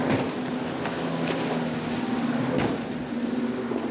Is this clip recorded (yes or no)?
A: yes